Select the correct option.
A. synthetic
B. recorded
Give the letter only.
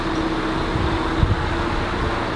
B